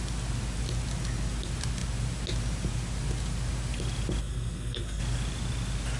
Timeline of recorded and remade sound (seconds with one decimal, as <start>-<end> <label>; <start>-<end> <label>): 0.0-4.2 recorded; 4.2-5.0 remade; 5.0-6.0 recorded